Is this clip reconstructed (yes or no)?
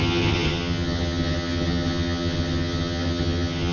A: yes